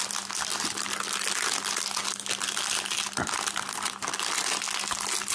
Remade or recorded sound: recorded